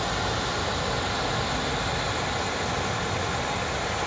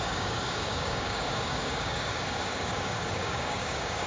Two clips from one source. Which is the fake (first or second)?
second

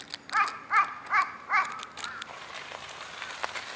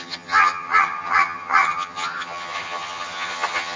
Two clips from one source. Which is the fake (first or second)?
second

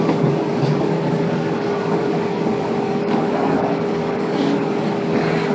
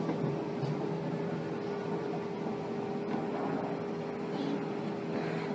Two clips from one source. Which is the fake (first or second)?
first